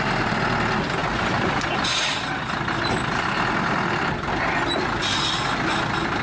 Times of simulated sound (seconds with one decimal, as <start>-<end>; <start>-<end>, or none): none